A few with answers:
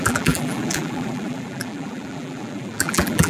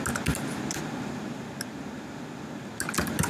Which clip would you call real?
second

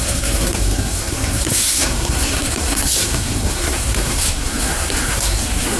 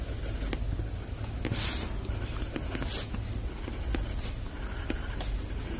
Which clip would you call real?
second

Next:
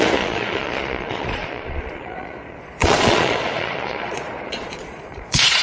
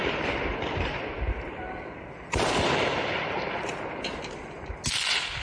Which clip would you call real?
second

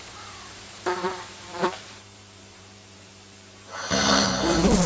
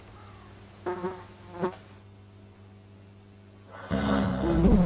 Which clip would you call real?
second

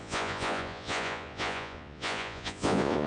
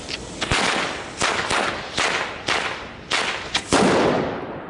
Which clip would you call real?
second